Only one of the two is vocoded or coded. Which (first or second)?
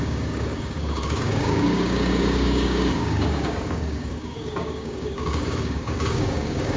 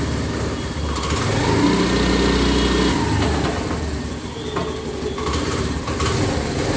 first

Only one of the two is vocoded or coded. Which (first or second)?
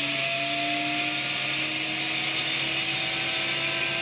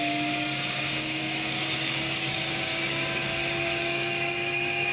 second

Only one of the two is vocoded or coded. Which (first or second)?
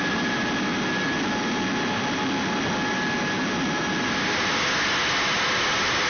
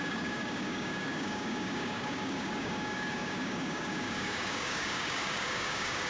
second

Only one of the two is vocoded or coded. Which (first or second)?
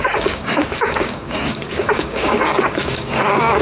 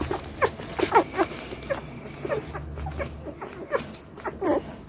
first